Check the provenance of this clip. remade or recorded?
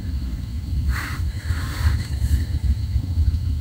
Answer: remade